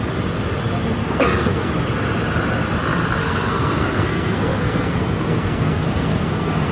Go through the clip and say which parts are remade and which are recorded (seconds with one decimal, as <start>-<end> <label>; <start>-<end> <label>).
0.0-1.0 recorded; 1.0-1.7 remade; 1.7-3.2 recorded; 3.2-6.7 remade

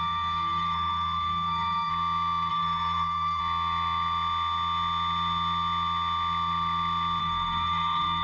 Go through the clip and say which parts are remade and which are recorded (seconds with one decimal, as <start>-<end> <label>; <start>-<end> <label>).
0.0-1.9 remade; 1.9-2.5 recorded; 2.5-3.4 remade; 3.4-7.2 recorded; 7.2-8.2 remade